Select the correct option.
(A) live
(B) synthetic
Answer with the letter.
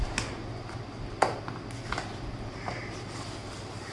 A